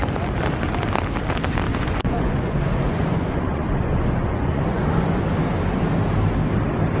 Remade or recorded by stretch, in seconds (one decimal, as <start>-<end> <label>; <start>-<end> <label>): 0.0-1.7 recorded; 1.7-5.2 remade; 5.2-7.0 recorded